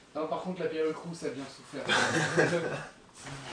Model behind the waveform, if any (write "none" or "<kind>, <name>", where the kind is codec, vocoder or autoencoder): none